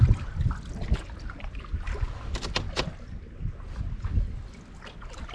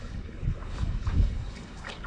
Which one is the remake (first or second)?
second